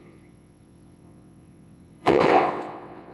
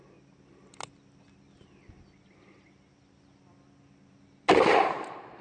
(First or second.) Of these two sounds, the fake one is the first